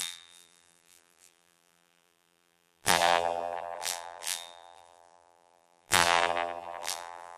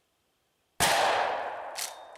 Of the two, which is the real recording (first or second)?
second